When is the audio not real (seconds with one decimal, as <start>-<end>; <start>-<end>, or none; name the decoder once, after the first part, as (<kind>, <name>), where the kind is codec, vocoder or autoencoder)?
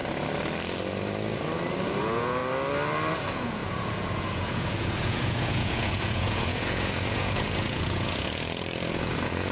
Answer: 2.0-2.4 (vocoder, Vocos); 3.1-9.5